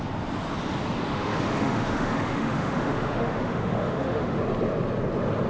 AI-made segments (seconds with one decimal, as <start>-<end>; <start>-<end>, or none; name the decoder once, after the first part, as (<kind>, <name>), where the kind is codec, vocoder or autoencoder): 1.1-4.4 (autoencoder, DAC-VAE)